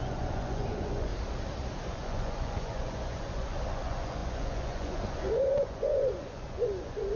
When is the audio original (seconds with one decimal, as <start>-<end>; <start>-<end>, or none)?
1.1-1.9